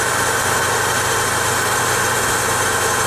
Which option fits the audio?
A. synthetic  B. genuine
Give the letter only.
B